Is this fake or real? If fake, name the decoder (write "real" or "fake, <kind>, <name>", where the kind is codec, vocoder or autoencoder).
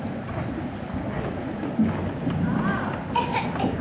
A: real